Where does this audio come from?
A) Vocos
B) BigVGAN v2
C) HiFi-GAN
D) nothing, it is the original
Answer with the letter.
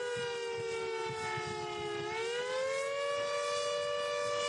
D